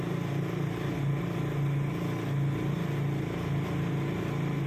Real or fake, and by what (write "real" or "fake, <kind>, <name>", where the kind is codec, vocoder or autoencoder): real